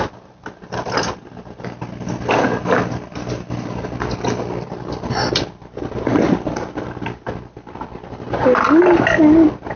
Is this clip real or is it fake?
real